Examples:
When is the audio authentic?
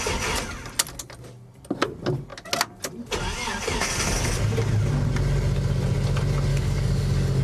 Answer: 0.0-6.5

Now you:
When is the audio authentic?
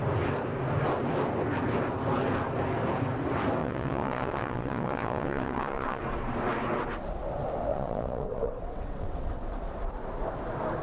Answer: 0.0-3.6; 6.0-7.7; 9.4-10.8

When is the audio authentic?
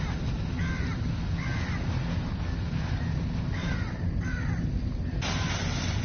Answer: 0.0-6.0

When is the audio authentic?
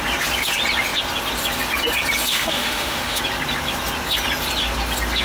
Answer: 0.0-2.3; 3.2-5.2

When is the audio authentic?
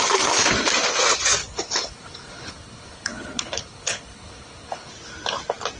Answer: 0.0-1.4; 4.9-5.8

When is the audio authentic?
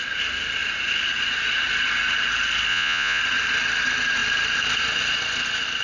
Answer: 0.0-2.7; 3.2-5.8